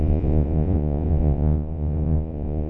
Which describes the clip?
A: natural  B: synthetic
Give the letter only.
B